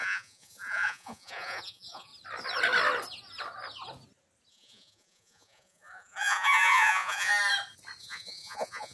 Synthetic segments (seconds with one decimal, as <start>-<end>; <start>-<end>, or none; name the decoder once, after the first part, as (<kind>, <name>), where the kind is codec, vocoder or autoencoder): 0.0-2.1 (vocoder, Vocos); 4.5-7.3; 8.0-8.9